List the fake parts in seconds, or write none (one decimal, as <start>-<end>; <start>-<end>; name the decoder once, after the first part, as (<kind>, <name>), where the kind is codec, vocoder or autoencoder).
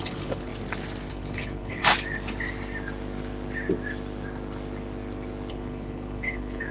0.0-0.5 (codec, HILCodec); 1.1-1.8; 5.5-6.7